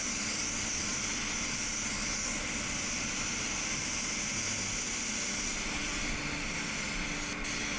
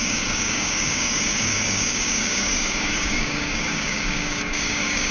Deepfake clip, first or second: second